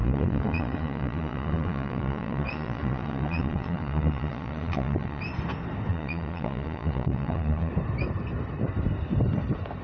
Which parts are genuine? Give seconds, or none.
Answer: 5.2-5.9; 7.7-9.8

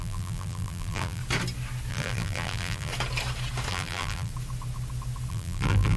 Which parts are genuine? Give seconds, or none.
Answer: 1.2-1.9; 2.9-3.7; 4.3-5.3

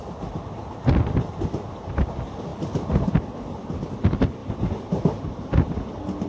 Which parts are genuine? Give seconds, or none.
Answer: 0.0-4.4; 5.5-6.3

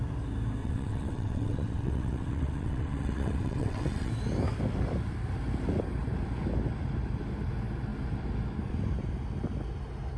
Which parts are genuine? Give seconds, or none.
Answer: 0.0-0.6; 4.1-10.2

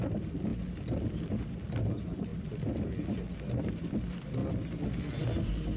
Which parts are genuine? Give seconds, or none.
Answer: 0.0-5.8

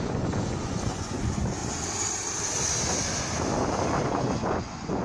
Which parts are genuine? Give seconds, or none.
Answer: 1.6-4.0

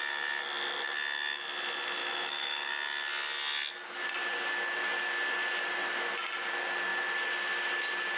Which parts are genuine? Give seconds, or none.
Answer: 0.0-2.0; 2.7-8.2